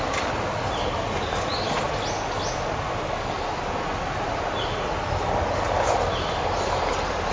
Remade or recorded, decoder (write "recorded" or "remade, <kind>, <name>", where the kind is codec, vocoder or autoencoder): recorded